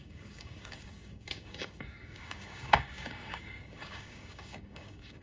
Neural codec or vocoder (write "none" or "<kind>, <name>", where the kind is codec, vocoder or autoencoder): codec, DAC